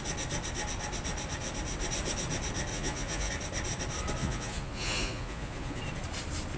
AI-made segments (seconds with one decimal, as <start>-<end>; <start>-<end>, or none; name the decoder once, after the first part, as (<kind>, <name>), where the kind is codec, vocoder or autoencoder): 2.7-3.3 (vocoder, Vocos); 4.2-5.8